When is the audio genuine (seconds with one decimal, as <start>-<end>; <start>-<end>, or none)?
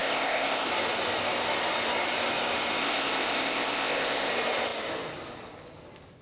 0.7-2.8; 4.3-6.2